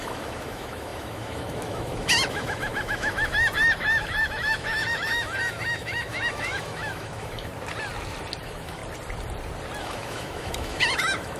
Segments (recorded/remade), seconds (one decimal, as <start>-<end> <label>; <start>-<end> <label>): 0.0-7.5 remade; 7.5-8.4 recorded; 8.4-8.8 remade; 8.8-9.8 recorded; 9.8-11.4 remade